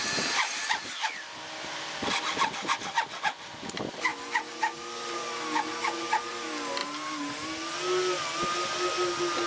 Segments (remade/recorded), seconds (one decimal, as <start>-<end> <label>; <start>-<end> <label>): 0.0-9.5 recorded